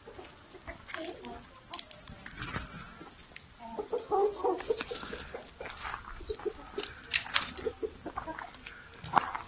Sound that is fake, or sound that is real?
real